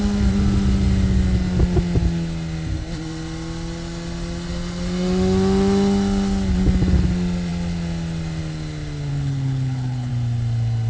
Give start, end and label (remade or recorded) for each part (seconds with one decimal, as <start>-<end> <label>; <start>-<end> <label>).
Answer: 0.0-9.1 recorded; 9.1-10.1 remade; 10.1-10.9 recorded